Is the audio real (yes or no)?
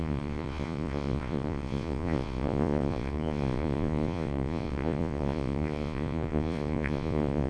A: no